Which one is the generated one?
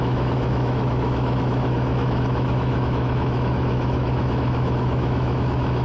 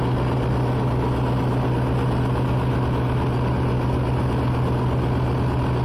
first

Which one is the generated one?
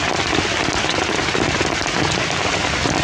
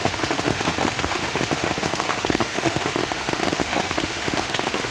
second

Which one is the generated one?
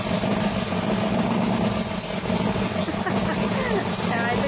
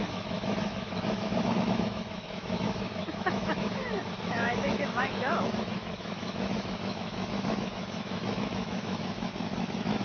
second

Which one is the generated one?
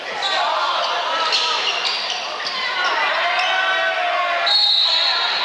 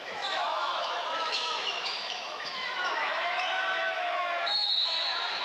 second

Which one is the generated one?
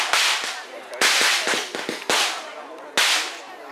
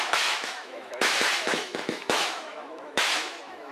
second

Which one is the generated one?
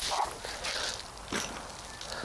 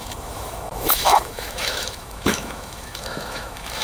second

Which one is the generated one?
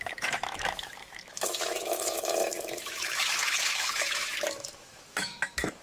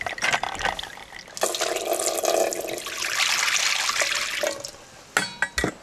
first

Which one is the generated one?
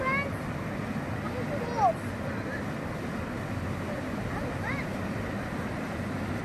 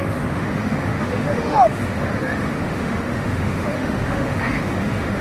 second